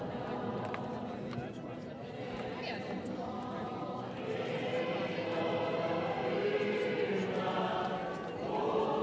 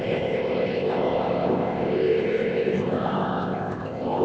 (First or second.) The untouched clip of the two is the first